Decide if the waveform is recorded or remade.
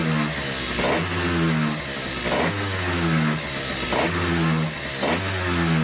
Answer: recorded